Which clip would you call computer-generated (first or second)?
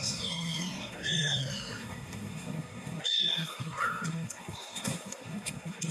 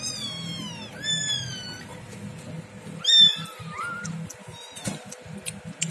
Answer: first